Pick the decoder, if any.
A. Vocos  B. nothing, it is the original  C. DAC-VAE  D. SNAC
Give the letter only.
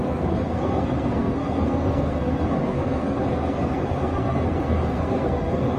D